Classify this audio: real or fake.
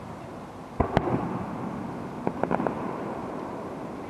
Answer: real